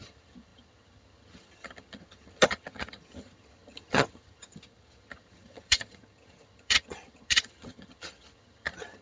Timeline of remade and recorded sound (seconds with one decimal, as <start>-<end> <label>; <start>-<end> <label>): 0.0-9.0 remade